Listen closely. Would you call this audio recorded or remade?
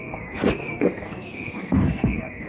remade